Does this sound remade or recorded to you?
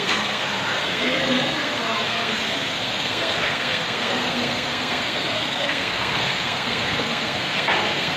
remade